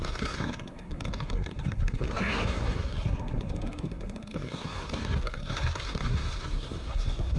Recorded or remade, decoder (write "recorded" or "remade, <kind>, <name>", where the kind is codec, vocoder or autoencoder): remade, codec, SNAC